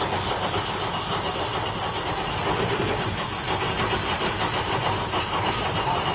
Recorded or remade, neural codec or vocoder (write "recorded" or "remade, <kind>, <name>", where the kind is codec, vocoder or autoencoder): recorded